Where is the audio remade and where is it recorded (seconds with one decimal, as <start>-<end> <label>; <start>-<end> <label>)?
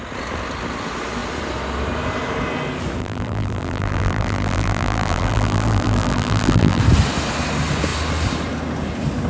0.0-3.0 recorded; 3.0-6.8 remade; 6.8-9.3 recorded